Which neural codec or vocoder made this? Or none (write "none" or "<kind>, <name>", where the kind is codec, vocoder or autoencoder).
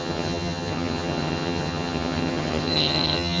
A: vocoder, HiFi-GAN